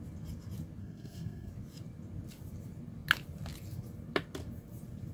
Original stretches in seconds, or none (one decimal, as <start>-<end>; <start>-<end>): 0.0-0.8; 1.5-5.1